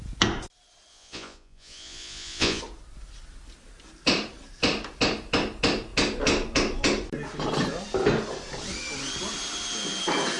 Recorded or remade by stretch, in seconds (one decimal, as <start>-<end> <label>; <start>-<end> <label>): 0.0-0.9 recorded; 0.9-2.6 remade; 2.6-10.4 recorded